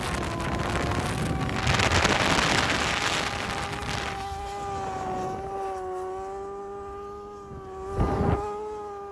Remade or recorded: recorded